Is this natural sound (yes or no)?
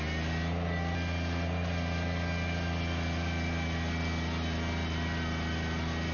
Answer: yes